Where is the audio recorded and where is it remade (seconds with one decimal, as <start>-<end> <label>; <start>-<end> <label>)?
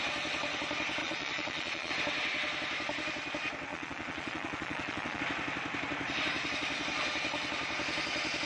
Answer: 0.0-1.0 recorded; 1.0-1.9 remade; 1.9-3.7 recorded; 3.7-5.2 remade; 5.2-8.5 recorded